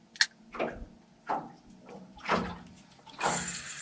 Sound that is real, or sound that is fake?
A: real